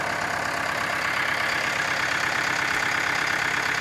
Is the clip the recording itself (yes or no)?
no